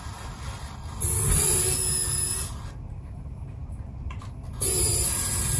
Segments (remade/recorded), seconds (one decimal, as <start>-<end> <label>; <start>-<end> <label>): 0.0-5.6 recorded